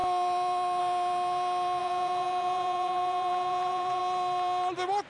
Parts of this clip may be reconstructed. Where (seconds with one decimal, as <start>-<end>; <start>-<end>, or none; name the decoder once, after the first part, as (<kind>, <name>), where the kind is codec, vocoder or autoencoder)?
1.8-4.0 (vocoder, Vocos)